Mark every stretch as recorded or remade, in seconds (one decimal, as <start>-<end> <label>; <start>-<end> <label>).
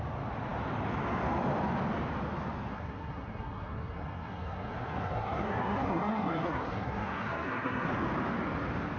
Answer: 0.0-2.7 recorded; 2.7-7.9 remade; 7.9-9.0 recorded